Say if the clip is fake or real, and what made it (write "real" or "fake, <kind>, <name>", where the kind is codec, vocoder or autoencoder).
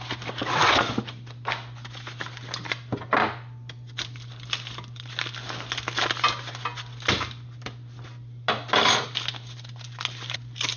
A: real